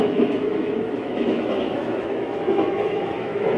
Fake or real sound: fake